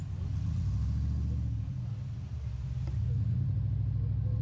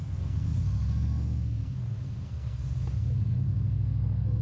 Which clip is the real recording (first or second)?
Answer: first